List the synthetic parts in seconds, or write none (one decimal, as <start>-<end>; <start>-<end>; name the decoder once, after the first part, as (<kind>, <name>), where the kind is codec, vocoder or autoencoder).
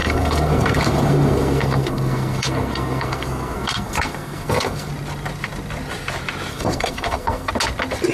0.0-4.9 (codec, SNAC); 6.5-7.5